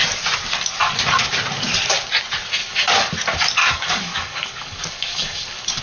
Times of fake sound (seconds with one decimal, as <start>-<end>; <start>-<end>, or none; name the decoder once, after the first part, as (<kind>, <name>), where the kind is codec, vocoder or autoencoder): 2.6-3.1 (codec, DAC); 3.6-5.8